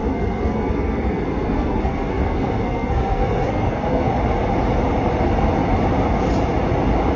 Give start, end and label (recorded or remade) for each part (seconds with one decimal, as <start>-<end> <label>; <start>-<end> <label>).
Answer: 0.0-4.1 remade; 4.1-7.2 recorded